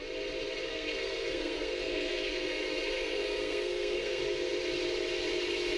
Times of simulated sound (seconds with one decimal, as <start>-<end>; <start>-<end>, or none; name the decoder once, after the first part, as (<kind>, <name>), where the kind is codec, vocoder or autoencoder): 0.7-4.2 (codec, SNAC)